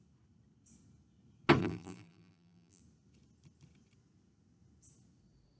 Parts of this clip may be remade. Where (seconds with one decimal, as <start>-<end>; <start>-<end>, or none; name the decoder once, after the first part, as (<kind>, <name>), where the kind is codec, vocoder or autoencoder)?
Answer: 1.6-2.8 (vocoder, BigVGAN v2)